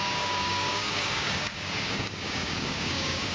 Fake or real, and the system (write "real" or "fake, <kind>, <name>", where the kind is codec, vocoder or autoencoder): fake, codec, DAC